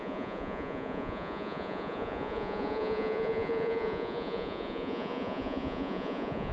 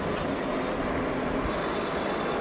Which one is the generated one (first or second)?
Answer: first